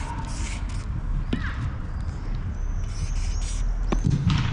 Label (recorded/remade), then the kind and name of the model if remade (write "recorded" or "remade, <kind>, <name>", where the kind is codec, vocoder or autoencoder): recorded